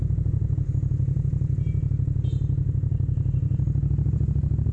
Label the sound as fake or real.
real